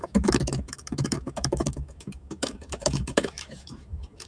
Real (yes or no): no